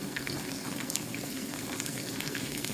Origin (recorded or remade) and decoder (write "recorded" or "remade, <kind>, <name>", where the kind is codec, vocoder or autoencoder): remade, codec, SNAC